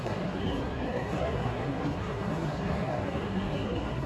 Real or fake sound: fake